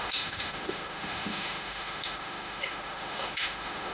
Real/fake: fake